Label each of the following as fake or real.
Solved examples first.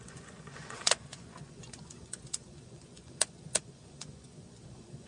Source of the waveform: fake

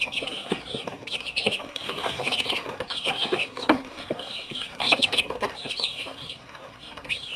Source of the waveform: fake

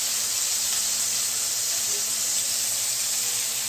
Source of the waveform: fake